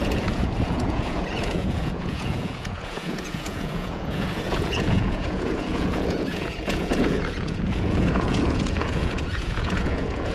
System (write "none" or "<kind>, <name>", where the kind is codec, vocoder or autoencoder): vocoder, Vocos